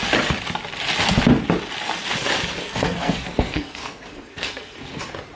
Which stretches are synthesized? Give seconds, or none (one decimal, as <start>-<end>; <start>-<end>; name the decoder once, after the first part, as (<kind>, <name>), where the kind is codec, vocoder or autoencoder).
2.6-5.0 (codec, SNAC)